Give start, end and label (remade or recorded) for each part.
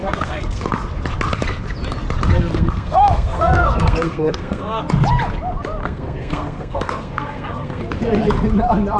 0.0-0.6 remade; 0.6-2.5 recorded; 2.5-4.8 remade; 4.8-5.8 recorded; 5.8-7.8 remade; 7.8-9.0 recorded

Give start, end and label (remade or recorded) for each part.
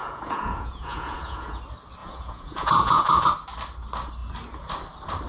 0.0-1.6 remade; 1.6-2.0 recorded; 2.0-3.3 remade; 3.3-5.3 recorded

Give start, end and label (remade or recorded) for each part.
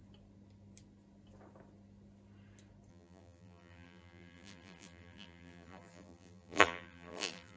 0.0-2.9 recorded; 2.9-7.6 remade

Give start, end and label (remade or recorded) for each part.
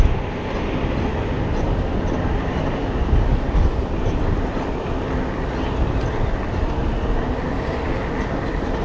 0.0-8.8 recorded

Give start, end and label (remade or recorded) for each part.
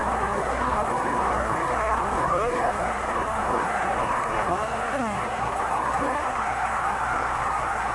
0.0-7.9 remade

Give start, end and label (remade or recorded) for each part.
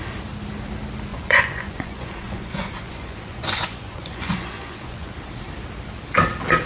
0.0-1.1 recorded; 1.1-5.1 remade; 5.1-6.7 recorded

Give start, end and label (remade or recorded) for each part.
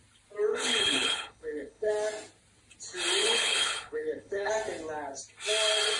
0.0-0.5 recorded; 0.5-1.9 remade; 1.9-3.2 recorded; 3.2-4.5 remade; 4.5-6.0 recorded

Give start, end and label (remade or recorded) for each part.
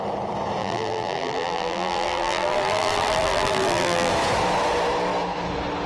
0.0-0.6 recorded; 0.6-4.1 remade; 4.1-5.9 recorded